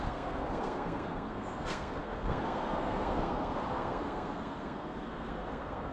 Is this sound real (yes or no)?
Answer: no